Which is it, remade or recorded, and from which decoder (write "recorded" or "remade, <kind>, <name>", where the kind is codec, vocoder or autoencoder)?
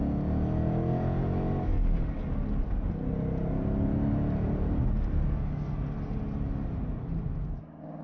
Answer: recorded